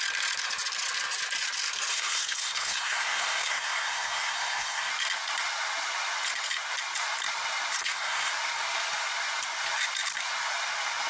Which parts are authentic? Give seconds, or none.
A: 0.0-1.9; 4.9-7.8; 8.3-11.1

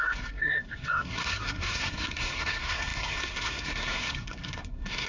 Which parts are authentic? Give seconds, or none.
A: none

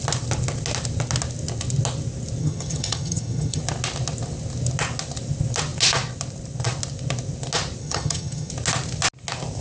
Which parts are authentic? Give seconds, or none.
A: 0.0-2.4; 3.6-7.8; 8.5-9.6

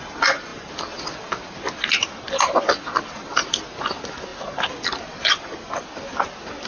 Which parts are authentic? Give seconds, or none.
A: 0.0-6.7

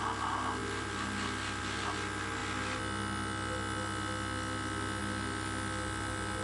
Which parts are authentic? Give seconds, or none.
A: 0.0-6.4